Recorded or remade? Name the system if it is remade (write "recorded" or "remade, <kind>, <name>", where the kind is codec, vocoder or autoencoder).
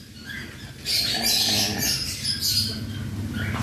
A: recorded